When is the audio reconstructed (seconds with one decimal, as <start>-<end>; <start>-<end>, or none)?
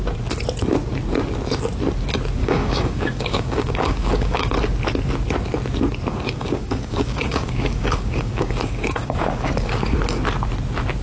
2.4-4.5; 6.1-9.9